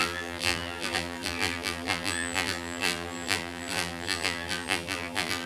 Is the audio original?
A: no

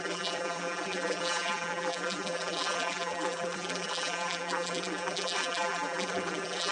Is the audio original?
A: no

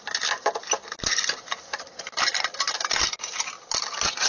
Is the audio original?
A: yes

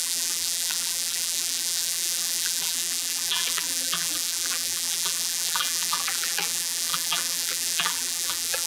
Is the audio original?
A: no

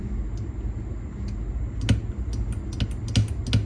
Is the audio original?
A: yes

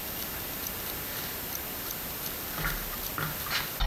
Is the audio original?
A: yes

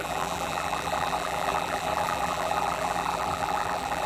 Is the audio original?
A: no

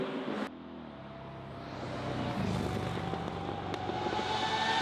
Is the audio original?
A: yes